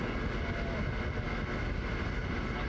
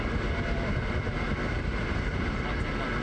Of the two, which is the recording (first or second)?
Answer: first